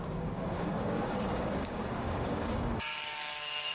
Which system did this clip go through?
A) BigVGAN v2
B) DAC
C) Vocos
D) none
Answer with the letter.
B